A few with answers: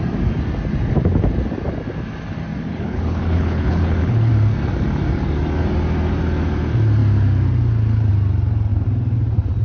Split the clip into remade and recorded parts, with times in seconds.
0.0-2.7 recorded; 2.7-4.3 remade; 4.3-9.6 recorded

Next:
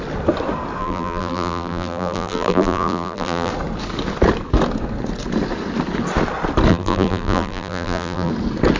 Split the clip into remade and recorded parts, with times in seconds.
0.0-0.8 recorded; 0.8-3.5 remade; 3.5-6.7 recorded; 6.7-8.3 remade; 8.3-8.8 recorded

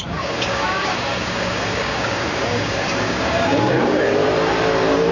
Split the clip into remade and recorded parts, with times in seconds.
0.0-4.2 remade; 4.2-5.1 recorded

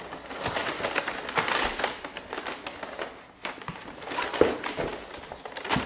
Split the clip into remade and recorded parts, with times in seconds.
0.0-5.9 recorded

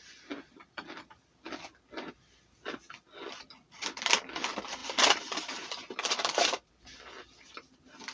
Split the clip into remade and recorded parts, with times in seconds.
0.0-4.8 recorded; 4.8-6.7 remade; 6.7-8.1 recorded